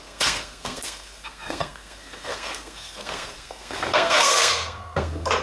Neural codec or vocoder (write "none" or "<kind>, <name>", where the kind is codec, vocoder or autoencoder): codec, SNAC